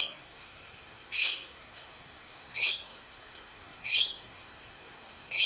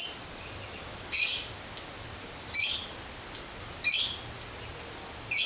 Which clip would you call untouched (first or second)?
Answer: second